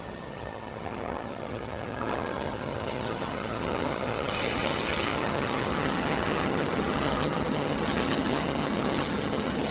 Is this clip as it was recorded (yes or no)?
no